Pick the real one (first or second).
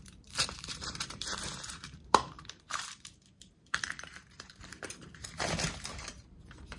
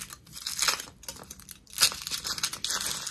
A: second